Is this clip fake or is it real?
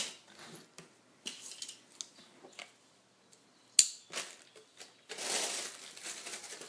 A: real